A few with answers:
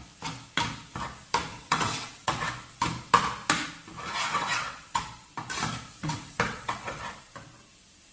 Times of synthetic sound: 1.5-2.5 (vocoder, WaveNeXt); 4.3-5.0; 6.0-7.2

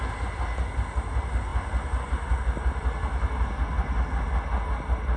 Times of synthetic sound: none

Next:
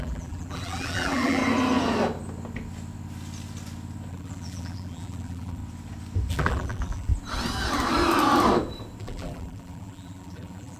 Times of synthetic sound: 0.0-1.4 (vocoder, BigVGAN v2); 4.1-5.6; 6.3-7.1; 9.0-10.8

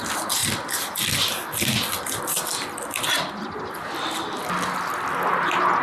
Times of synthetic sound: none

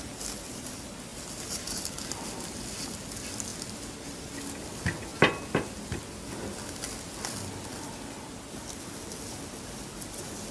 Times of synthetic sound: none

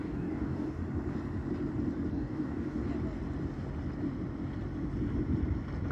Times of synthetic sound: 0.0-0.8 (codec, DAC); 2.1-2.8